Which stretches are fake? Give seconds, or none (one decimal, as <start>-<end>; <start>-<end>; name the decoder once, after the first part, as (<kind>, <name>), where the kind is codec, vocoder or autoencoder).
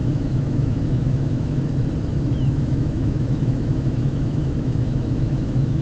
0.0-1.6 (autoencoder, DAC-VAE); 2.1-5.8